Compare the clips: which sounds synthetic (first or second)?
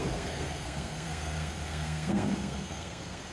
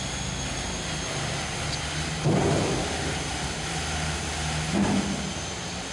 first